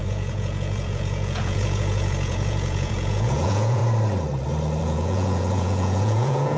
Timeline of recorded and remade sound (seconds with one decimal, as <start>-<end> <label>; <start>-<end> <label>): 0.0-3.8 remade; 3.8-4.8 recorded; 4.8-6.6 remade